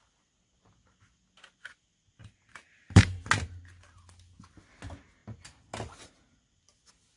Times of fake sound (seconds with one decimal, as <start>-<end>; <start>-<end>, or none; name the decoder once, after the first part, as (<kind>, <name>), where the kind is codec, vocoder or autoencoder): 2.2-3.2 (vocoder, BigVGAN v2)

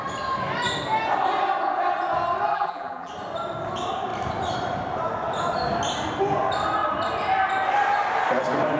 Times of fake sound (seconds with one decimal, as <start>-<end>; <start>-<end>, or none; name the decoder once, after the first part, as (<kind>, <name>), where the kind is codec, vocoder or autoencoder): 2.5-3.1 (vocoder, BigVGAN v2)

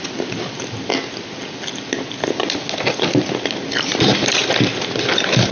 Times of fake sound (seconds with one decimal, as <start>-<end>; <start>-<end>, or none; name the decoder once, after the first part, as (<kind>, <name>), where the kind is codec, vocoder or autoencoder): none